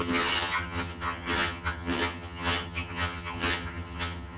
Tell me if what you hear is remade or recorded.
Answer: remade